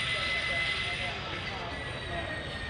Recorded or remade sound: recorded